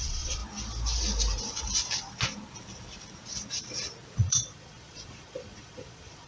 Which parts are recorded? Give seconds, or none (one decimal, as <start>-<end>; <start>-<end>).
0.4-4.2

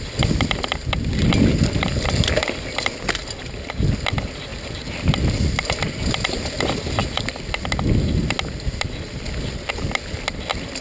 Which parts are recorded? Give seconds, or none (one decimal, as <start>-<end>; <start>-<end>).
0.0-10.8